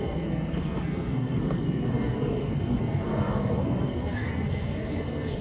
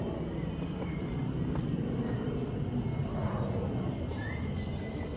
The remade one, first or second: first